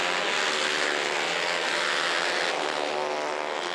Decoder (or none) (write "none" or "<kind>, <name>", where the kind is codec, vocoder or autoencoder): none